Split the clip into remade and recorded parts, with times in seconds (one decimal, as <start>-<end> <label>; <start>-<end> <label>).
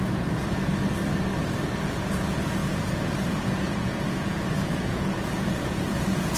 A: 0.0-0.7 remade; 0.7-1.8 recorded; 1.8-6.4 remade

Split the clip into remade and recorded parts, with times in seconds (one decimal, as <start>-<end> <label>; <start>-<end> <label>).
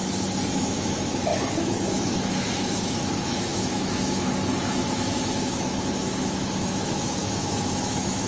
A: 0.0-0.5 recorded; 0.5-8.3 remade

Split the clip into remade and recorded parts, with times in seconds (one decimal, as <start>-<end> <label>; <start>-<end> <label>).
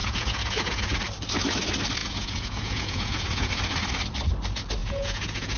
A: 0.0-1.0 remade; 1.0-2.0 recorded; 2.0-3.5 remade; 3.5-4.8 recorded; 4.8-5.6 remade